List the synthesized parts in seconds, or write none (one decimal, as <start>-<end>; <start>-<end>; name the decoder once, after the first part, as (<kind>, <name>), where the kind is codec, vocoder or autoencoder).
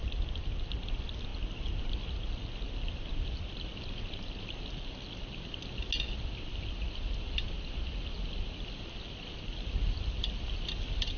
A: none